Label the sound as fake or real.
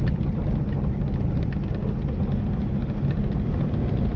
real